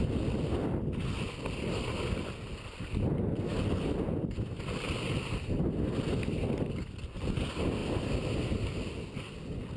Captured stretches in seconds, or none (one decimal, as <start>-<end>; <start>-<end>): 0.0-9.8